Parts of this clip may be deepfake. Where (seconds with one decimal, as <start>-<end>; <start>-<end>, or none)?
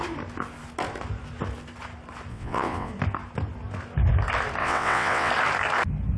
2.3-2.9; 4.6-5.3